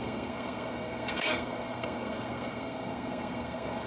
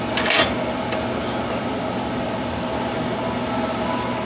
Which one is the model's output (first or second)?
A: first